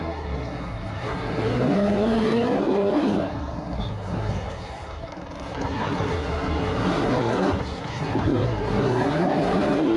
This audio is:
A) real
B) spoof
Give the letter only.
B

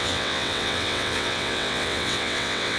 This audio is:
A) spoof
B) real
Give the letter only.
A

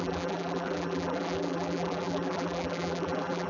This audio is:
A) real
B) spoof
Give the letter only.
B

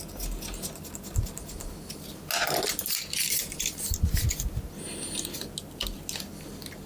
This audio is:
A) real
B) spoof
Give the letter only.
A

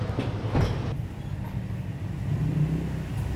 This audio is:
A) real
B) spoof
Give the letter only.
A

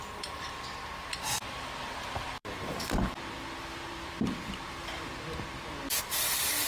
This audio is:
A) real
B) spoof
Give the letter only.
B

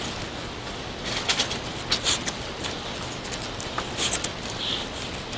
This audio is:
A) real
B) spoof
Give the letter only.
A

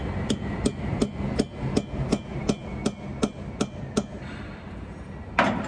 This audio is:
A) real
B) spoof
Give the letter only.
A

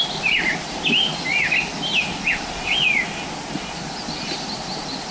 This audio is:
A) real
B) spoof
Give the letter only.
A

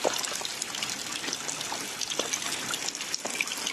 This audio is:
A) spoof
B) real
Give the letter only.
B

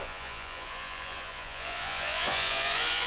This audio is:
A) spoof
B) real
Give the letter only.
A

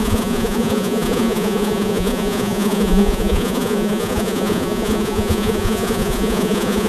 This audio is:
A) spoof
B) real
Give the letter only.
A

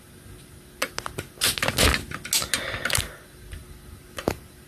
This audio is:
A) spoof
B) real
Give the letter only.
B